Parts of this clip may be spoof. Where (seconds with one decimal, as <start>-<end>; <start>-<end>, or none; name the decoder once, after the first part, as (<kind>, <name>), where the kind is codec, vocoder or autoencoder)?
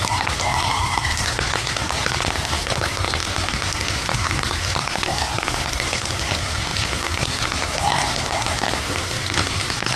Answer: 0.0-10.0 (codec, SNAC)